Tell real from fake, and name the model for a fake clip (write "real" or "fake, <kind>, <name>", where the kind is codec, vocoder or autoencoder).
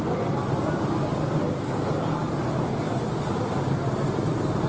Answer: real